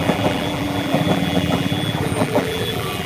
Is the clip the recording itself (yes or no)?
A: no